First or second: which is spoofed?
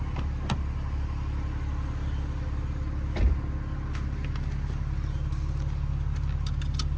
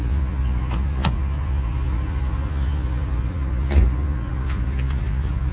second